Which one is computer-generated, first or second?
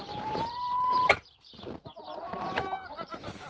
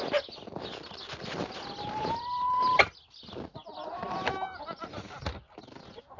first